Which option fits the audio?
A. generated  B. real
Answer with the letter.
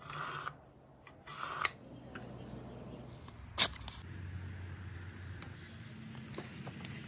B